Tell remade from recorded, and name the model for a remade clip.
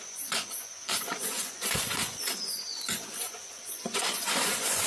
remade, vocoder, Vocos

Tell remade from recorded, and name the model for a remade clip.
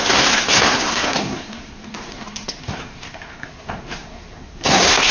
remade, codec, SNAC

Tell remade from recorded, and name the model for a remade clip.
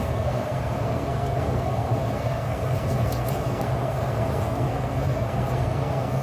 remade, codec, SNAC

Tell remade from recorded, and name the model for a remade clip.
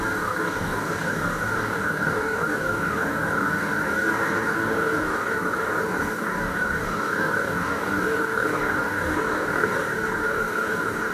remade, codec, DAC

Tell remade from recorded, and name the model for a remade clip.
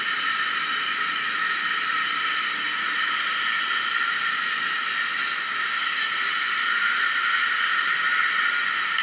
recorded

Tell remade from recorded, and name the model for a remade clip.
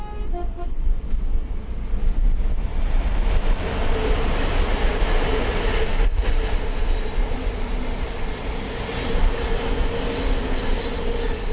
recorded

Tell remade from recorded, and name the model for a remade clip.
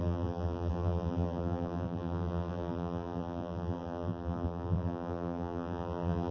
remade, vocoder, BigVGAN v2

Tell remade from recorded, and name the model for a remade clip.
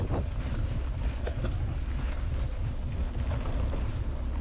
recorded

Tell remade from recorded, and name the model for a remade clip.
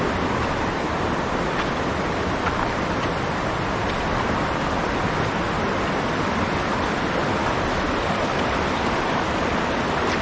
recorded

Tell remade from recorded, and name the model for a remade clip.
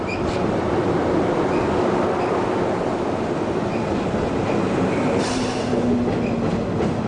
recorded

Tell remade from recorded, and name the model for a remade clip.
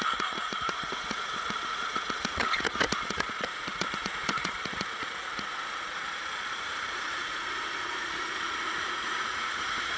remade, vocoder, Vocos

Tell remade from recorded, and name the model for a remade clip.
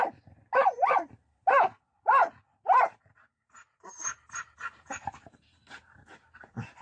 remade, vocoder, BigVGAN v2